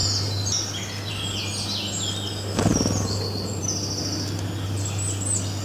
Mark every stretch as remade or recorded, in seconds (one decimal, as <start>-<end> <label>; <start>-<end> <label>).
0.0-5.6 recorded